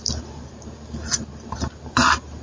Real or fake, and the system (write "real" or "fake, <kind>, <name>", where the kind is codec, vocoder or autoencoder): real